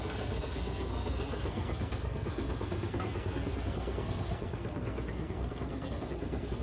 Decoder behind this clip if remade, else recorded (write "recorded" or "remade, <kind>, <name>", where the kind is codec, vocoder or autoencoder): remade, codec, SNAC